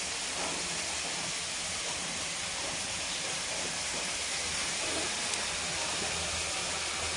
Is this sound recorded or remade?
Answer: recorded